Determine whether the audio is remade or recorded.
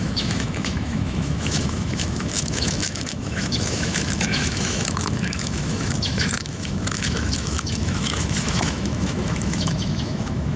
remade